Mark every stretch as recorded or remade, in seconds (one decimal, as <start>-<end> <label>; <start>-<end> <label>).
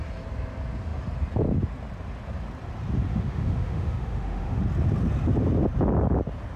0.0-3.1 recorded; 3.1-4.6 remade; 4.6-6.6 recorded